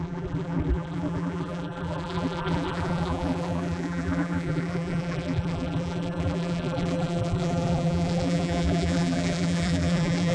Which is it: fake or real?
fake